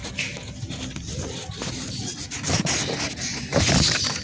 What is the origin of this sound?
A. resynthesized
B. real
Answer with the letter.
B